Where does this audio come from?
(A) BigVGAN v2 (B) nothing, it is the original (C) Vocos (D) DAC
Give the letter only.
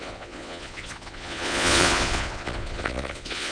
C